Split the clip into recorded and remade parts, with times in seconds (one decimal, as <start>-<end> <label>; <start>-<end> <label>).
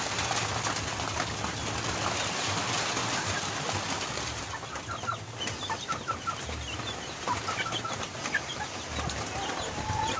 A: 0.0-10.2 recorded